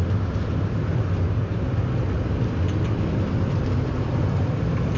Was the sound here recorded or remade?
recorded